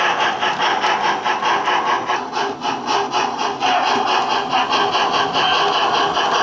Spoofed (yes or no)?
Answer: no